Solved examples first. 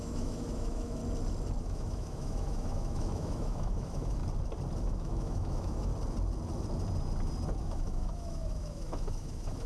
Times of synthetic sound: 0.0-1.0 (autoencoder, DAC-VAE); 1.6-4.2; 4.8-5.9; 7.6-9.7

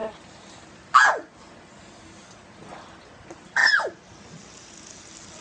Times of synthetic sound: none